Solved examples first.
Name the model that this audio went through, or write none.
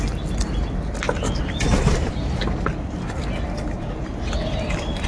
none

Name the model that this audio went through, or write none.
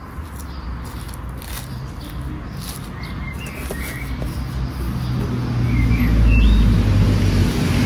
none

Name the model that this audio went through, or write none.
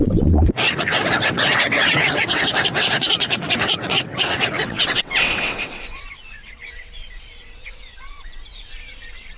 vocoder, WaveNeXt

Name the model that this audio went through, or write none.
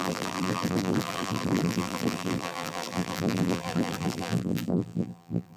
vocoder, BigVGAN v2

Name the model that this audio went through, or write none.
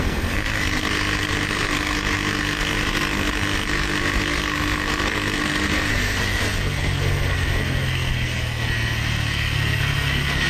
codec, SNAC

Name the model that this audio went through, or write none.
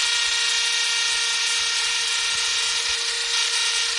none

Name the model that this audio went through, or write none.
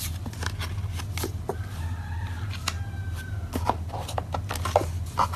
none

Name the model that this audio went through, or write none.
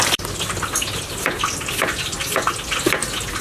none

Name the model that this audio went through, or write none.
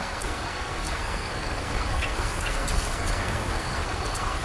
codec, SNAC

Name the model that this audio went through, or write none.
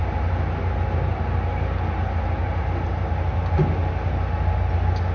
none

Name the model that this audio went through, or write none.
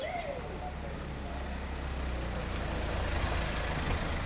none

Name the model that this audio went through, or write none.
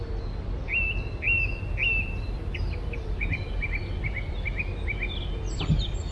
none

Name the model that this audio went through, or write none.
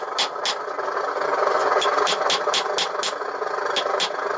none